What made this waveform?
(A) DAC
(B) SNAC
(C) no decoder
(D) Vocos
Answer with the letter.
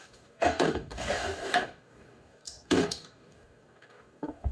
A